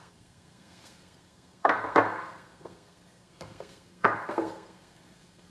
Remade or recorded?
remade